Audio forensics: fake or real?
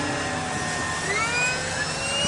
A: real